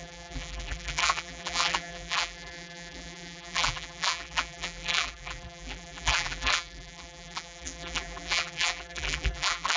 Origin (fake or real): fake